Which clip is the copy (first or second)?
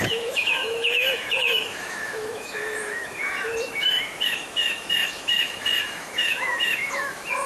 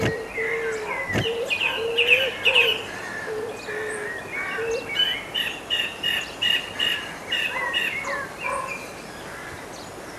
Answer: first